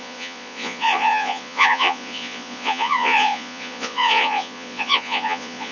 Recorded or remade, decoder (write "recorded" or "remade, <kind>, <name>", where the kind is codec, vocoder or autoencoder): remade, vocoder, Vocos